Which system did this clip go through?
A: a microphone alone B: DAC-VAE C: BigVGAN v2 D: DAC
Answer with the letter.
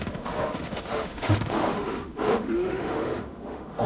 B